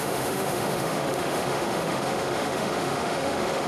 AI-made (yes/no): yes